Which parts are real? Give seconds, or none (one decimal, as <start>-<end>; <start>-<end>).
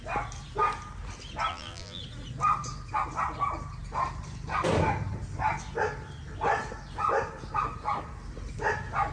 0.0-1.5; 2.0-9.1